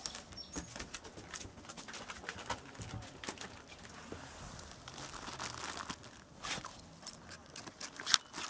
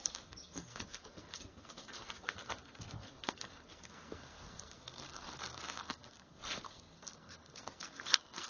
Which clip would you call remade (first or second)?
second